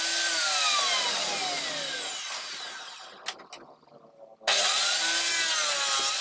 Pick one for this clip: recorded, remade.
recorded